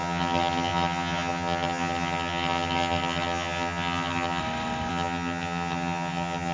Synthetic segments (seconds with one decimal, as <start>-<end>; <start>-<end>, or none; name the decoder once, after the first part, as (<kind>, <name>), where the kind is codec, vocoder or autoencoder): 0.0-4.4 (vocoder, HiFi-GAN); 4.9-6.5